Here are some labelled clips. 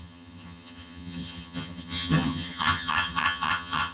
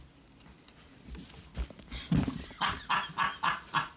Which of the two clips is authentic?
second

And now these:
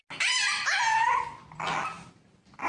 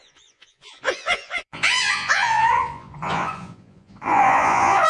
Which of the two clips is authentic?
first